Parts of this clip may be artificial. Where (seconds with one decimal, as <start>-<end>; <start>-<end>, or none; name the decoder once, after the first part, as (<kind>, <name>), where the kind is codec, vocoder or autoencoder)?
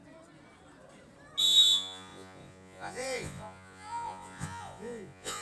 1.4-5.4 (vocoder, Vocos)